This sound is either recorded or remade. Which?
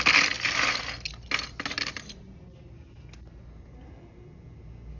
recorded